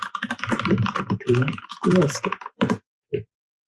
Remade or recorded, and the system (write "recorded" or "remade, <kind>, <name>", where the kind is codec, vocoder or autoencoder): remade, vocoder, BigVGAN v2